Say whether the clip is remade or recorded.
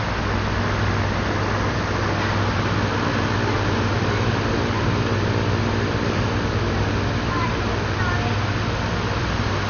recorded